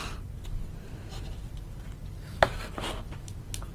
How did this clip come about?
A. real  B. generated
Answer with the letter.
A